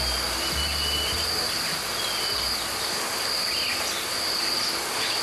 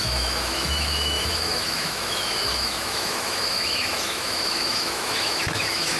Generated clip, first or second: second